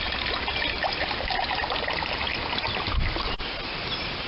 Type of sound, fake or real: real